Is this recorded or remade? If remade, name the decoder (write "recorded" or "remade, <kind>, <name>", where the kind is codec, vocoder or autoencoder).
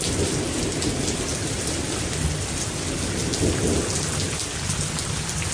recorded